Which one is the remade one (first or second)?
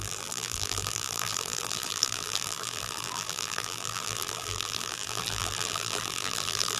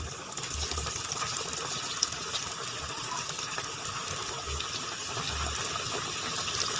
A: first